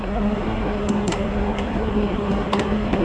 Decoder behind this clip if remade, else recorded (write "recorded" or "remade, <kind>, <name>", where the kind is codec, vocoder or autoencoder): remade, codec, SNAC